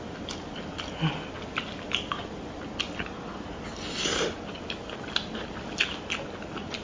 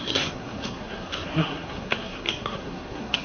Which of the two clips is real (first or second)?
first